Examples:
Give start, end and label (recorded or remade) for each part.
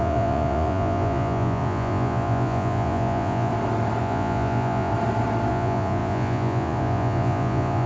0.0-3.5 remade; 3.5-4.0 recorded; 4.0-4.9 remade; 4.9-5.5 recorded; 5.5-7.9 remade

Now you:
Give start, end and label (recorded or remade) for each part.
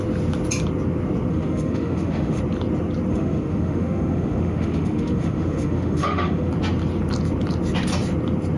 0.0-1.3 recorded; 1.3-2.4 remade; 2.4-3.1 recorded; 3.1-6.5 remade; 6.5-8.6 recorded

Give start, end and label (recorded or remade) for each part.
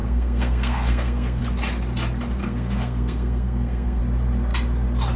0.0-1.4 remade; 1.4-2.4 recorded; 2.4-4.0 remade; 4.0-5.2 recorded